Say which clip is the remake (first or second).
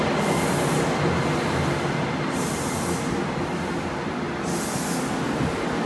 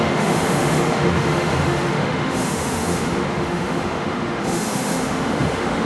second